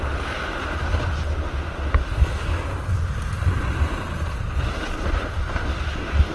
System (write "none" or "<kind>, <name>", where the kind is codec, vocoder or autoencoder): none